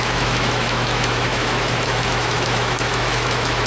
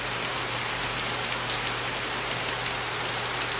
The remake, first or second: first